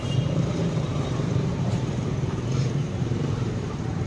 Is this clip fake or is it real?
fake